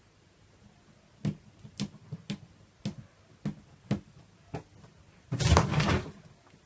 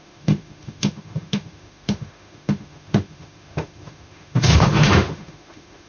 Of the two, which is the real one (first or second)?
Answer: first